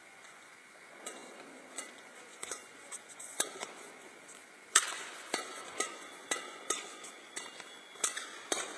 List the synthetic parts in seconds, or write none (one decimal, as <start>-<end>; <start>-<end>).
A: 0.0-7.3; 7.8-8.8